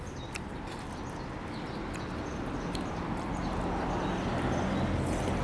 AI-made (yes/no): no